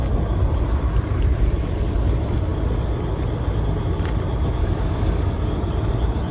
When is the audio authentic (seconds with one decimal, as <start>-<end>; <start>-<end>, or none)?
0.0-4.6; 5.3-6.3